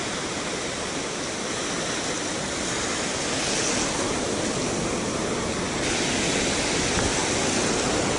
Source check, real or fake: real